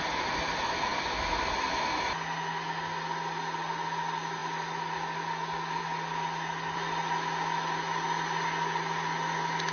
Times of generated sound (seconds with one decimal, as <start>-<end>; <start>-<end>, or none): none